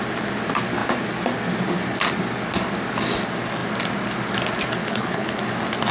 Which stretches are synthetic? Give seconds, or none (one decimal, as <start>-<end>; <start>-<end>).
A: 4.8-5.4